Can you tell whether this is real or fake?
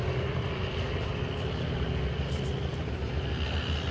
real